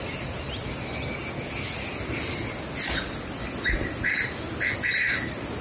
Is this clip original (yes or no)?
yes